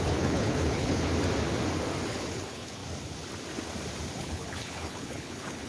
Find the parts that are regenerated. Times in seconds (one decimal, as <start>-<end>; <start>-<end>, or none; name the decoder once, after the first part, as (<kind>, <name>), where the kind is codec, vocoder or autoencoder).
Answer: 0.0-1.1 (codec, HILCodec); 2.1-2.8; 4.2-5.7